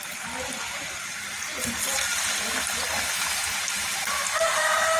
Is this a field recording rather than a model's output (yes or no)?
yes